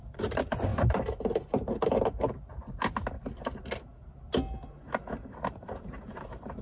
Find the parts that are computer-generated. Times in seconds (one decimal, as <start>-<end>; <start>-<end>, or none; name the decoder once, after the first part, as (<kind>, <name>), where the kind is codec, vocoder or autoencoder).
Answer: 0.0-0.7 (vocoder, BigVGAN v2); 4.7-6.6